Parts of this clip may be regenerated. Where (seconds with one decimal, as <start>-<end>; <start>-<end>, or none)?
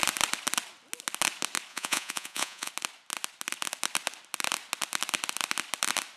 1.7-2.7